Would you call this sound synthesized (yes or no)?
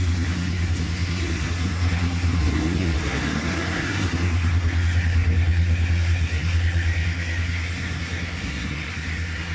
yes